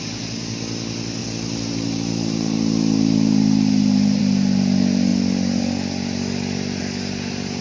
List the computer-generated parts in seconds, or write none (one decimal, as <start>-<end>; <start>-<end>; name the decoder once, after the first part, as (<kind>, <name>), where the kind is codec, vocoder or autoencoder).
1.2-4.2 (vocoder, BigVGAN v2)